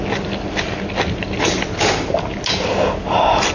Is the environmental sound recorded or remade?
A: recorded